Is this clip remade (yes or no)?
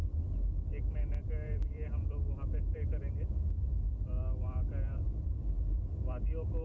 yes